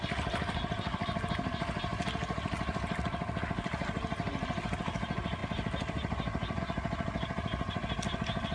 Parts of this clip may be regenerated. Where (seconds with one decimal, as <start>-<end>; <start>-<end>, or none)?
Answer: none